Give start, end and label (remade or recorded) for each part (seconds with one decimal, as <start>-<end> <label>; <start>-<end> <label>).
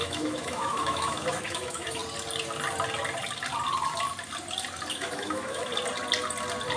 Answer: 0.0-2.0 remade; 2.0-4.9 recorded; 4.9-5.7 remade; 5.7-6.8 recorded